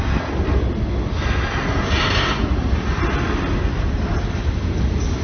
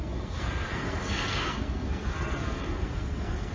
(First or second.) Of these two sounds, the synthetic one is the second